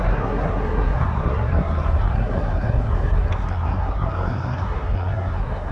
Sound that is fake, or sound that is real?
fake